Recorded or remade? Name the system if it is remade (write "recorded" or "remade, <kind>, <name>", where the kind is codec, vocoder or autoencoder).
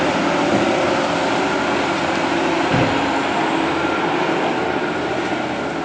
recorded